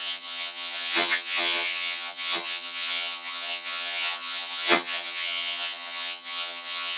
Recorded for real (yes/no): no